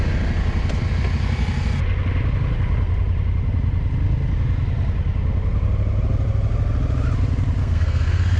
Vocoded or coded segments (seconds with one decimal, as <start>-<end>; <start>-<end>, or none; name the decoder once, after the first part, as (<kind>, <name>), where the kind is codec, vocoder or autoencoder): 7.6-8.4 (codec, SNAC)